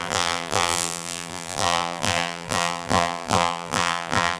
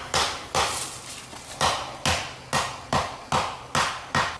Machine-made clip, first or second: first